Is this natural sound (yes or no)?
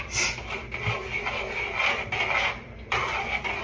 yes